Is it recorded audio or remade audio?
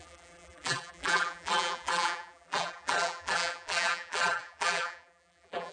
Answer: remade